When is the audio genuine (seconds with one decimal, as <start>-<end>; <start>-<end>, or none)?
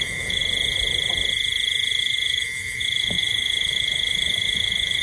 0.4-2.0